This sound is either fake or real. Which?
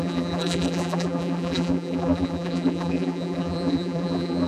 fake